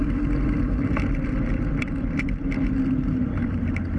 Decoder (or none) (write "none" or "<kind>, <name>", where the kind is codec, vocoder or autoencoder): none